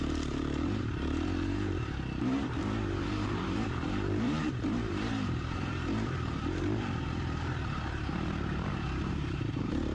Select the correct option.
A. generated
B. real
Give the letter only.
A